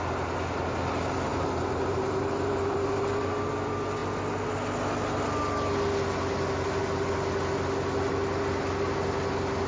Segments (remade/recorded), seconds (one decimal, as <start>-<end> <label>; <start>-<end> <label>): 0.0-1.3 recorded; 1.3-3.4 remade; 3.4-9.7 recorded